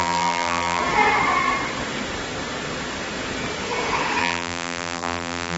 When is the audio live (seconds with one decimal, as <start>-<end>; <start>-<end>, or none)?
0.8-4.2